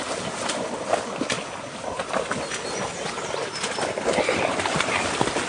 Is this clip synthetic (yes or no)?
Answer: no